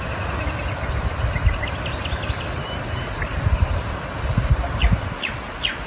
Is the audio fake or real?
real